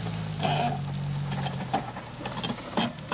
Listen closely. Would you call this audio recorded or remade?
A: recorded